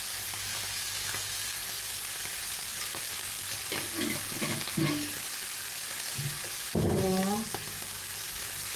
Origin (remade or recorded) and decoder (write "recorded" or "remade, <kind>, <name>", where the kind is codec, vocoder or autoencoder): remade, codec, DAC